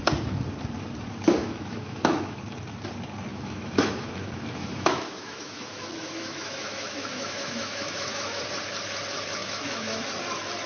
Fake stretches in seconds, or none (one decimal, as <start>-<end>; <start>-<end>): 1.4-2.4; 3.3-8.4; 9.4-10.0